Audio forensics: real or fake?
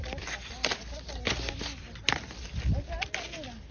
real